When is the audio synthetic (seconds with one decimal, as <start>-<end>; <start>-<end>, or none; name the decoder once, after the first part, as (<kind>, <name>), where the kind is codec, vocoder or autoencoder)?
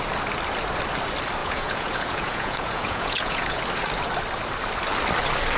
1.4-3.6 (vocoder, Vocos)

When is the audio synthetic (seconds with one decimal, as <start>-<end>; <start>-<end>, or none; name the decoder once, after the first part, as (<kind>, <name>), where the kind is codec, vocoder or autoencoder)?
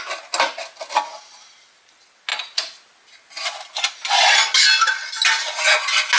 none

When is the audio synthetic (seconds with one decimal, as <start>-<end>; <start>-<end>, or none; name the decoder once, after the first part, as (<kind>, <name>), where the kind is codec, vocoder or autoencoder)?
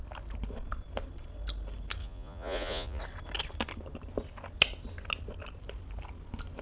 2.0-3.0 (vocoder, Vocos)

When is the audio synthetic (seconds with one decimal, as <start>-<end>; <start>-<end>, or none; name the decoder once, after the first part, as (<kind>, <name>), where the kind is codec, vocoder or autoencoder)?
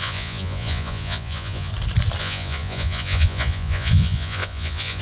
0.0-1.7 (vocoder, Vocos); 2.2-5.0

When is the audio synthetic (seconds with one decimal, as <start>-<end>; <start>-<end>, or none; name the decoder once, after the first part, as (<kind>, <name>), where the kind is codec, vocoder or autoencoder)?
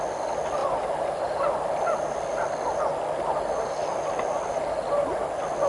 none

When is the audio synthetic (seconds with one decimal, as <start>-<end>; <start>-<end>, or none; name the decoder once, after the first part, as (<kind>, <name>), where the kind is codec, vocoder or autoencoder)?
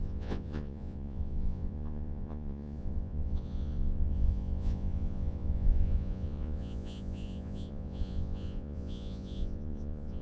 0.0-10.2 (vocoder, Vocos)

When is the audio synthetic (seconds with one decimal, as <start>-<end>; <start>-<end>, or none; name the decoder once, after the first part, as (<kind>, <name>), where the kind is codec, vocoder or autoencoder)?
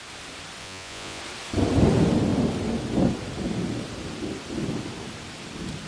0.6-1.2 (vocoder, Vocos)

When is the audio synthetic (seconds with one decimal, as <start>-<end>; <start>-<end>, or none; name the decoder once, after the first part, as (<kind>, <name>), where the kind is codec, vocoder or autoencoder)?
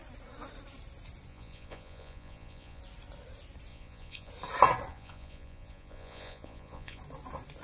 1.3-2.8 (vocoder, Vocos); 3.7-4.3; 4.9-7.0